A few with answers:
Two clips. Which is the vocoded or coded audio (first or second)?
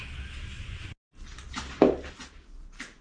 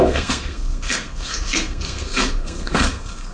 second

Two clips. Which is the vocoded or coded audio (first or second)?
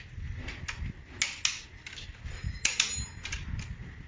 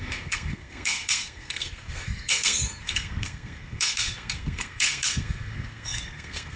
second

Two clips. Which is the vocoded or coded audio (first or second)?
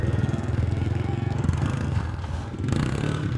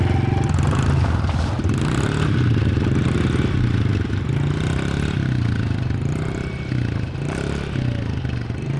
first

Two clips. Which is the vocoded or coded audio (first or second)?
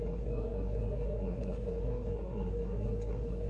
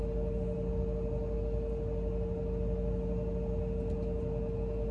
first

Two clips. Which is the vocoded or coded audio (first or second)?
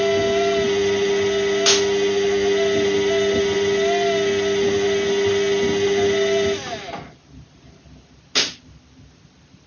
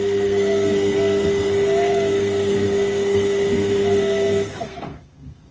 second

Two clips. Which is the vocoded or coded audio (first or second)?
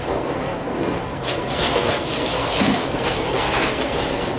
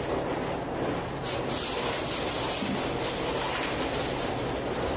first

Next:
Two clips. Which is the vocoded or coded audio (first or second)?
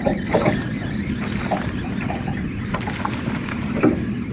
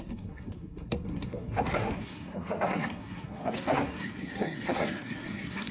second